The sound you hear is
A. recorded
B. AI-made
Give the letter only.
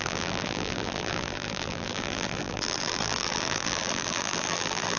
B